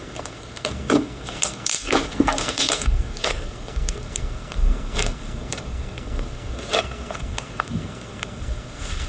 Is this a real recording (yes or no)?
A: no